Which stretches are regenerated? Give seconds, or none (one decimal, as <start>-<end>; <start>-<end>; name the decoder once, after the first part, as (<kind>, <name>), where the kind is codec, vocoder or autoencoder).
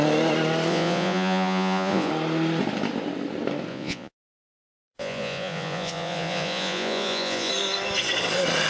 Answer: 0.7-2.1 (vocoder, Vocos); 3.7-7.5